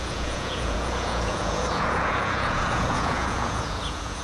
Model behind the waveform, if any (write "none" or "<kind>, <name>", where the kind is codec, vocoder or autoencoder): vocoder, Vocos